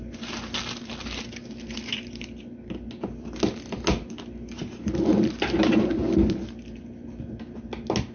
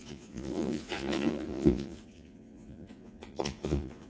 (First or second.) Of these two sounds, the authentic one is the first